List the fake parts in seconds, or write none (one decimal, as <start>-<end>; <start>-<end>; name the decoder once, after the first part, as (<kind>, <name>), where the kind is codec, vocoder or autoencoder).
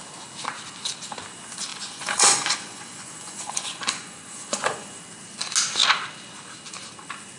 1.7-5.0 (vocoder, Vocos)